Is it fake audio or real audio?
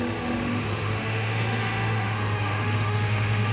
fake